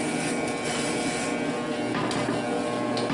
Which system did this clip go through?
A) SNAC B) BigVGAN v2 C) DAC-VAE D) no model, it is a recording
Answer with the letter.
D